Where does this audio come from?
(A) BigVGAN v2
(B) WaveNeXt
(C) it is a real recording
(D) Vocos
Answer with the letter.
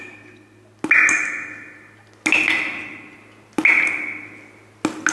C